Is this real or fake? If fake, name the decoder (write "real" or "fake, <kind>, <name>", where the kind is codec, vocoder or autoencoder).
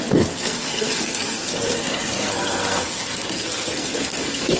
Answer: fake, codec, SNAC